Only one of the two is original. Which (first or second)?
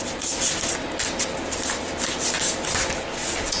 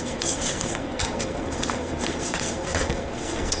first